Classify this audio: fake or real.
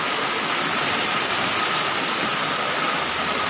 real